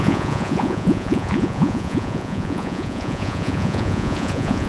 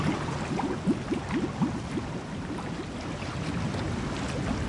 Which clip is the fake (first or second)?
first